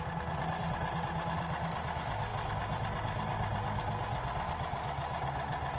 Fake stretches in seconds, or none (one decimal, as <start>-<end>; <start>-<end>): none